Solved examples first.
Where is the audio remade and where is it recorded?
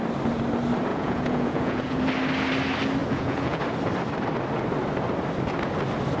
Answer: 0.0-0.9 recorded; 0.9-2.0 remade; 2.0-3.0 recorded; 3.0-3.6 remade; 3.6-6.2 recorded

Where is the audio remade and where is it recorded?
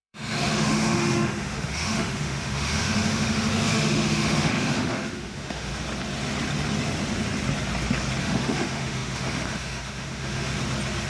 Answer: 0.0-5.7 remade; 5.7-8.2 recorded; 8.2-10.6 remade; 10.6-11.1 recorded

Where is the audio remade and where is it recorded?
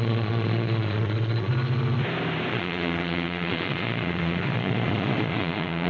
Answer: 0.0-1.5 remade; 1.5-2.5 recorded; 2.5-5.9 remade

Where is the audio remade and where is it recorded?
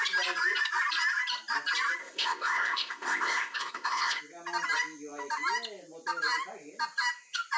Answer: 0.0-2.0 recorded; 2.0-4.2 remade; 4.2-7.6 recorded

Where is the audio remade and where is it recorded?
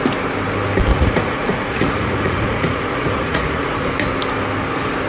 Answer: 0.0-0.9 recorded; 0.9-3.9 remade; 3.9-5.1 recorded